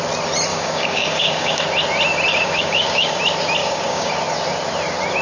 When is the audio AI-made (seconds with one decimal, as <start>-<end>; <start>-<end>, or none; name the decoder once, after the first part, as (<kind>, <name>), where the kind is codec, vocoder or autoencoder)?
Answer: 0.5-1.6 (codec, DAC); 2.3-3.2; 3.6-4.1